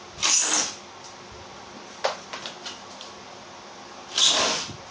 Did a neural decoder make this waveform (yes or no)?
no